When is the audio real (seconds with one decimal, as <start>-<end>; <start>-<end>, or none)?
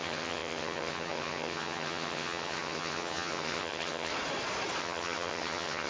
4.1-4.8